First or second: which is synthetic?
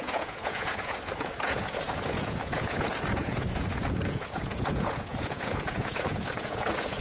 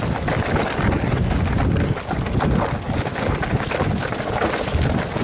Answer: first